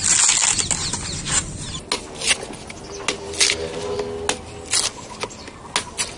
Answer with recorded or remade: recorded